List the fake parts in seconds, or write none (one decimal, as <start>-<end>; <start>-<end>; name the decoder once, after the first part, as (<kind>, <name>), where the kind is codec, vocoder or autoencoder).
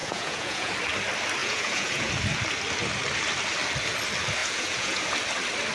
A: 0.0-0.7 (vocoder, Vocos); 1.4-2.1; 4.4-5.0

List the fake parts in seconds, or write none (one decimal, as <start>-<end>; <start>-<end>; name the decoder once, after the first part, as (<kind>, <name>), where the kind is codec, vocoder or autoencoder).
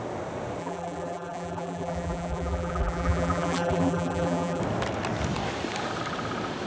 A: 0.6-4.6 (vocoder, BigVGAN v2)